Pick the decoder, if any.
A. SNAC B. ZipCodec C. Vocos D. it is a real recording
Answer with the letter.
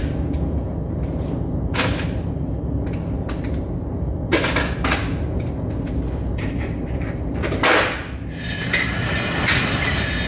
D